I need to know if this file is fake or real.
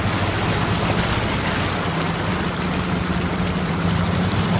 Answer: real